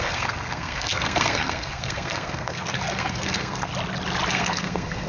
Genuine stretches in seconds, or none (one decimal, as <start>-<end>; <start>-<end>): 3.7-4.3